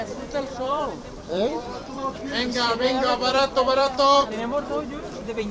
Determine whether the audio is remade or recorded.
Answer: remade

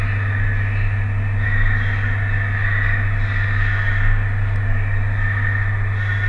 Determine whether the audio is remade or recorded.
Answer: recorded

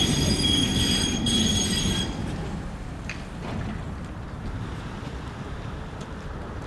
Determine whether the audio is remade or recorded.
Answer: remade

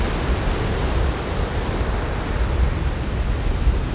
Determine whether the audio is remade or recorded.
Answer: recorded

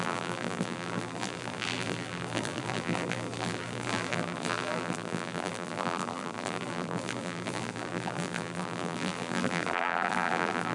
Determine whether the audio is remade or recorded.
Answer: remade